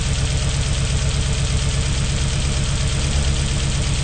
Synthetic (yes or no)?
no